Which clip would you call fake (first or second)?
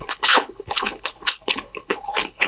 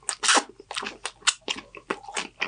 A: first